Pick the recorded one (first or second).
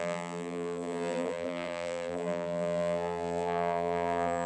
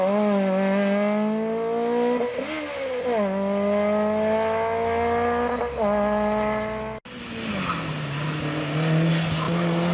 second